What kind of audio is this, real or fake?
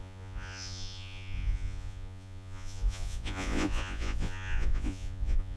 fake